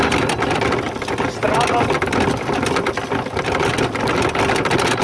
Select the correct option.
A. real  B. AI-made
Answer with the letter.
A